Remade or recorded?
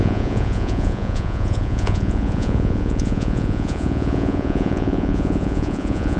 remade